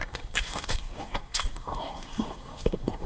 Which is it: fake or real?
fake